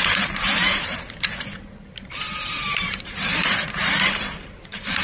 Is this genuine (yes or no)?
no